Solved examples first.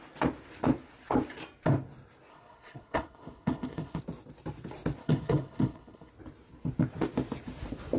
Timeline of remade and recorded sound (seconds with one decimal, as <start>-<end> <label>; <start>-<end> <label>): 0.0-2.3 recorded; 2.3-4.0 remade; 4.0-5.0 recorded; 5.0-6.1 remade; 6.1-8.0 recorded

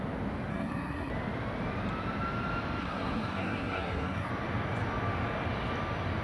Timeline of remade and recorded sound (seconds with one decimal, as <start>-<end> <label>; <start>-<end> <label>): 0.0-0.5 recorded; 0.5-1.1 remade; 1.1-2.8 recorded; 2.8-4.3 remade; 4.3-6.2 recorded

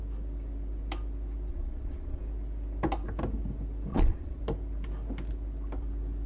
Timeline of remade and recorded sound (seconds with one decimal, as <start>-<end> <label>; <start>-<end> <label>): 0.0-1.5 recorded; 1.5-2.2 remade; 2.2-3.9 recorded; 3.9-4.4 remade; 4.4-6.3 recorded